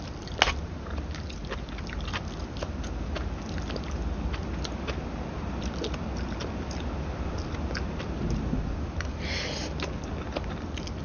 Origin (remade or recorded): recorded